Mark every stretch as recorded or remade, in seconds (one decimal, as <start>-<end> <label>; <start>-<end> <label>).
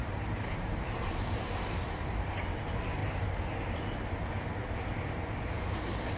0.0-3.0 remade; 3.0-5.6 recorded; 5.6-6.2 remade